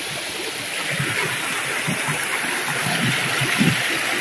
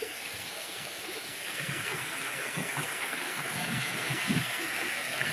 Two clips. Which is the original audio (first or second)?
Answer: first